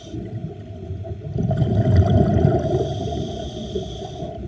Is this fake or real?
real